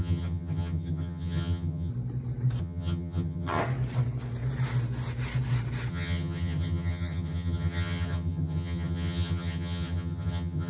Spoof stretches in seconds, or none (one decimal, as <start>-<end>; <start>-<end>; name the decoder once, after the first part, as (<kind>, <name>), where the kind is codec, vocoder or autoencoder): 0.0-1.9 (vocoder, HiFi-GAN); 2.6-3.6; 5.9-10.7